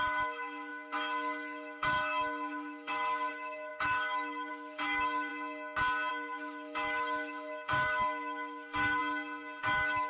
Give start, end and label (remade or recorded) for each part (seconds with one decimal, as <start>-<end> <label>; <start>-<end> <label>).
0.0-5.3 remade; 5.3-6.1 recorded; 6.1-9.0 remade; 9.0-9.6 recorded; 9.6-10.1 remade